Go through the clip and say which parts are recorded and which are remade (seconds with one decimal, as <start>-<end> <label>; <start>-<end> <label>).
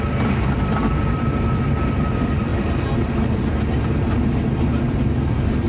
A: 0.0-5.7 recorded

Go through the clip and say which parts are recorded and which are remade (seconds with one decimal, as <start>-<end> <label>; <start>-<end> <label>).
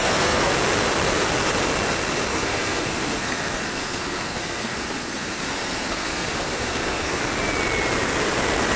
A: 0.0-0.5 remade; 0.5-2.3 recorded; 2.3-7.2 remade; 7.2-8.8 recorded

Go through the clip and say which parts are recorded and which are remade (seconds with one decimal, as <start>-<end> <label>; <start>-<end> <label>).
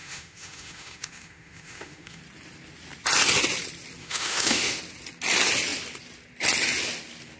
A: 0.0-2.2 remade; 2.2-4.0 recorded; 4.0-4.8 remade; 4.8-7.4 recorded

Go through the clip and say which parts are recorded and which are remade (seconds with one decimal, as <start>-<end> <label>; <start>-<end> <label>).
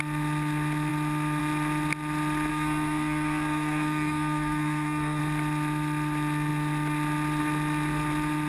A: 0.0-2.5 recorded; 2.5-5.2 remade; 5.2-8.5 recorded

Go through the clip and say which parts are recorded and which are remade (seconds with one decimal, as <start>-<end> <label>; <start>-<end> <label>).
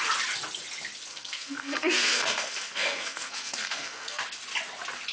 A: 0.0-1.1 recorded; 1.1-4.2 remade; 4.2-5.1 recorded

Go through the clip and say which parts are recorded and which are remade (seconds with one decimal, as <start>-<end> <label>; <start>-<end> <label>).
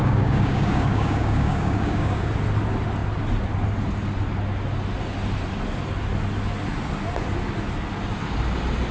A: 0.0-2.3 remade; 2.3-8.9 recorded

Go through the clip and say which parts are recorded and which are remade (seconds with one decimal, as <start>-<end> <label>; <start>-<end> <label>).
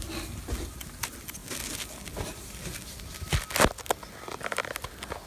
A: 0.0-5.3 recorded